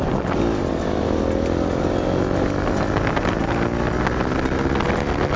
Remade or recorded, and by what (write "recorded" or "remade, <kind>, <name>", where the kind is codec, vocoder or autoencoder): recorded